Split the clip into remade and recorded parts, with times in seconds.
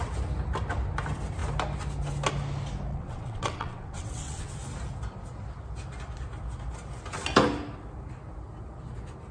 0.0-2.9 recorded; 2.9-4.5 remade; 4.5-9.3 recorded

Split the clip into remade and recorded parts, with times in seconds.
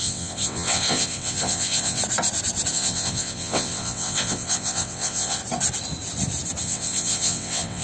0.0-2.0 remade; 2.0-2.7 recorded; 2.7-5.4 remade; 5.4-6.6 recorded; 6.6-7.8 remade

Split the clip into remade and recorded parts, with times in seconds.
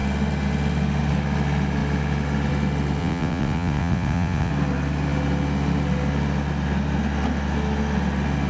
0.0-3.0 recorded; 3.0-4.5 remade; 4.5-8.5 recorded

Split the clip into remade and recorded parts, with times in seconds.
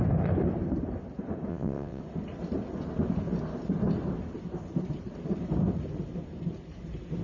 0.0-1.5 recorded; 1.5-2.0 remade; 2.0-7.2 recorded